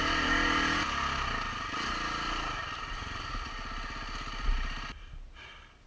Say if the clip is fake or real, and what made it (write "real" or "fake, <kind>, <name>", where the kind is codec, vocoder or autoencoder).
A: real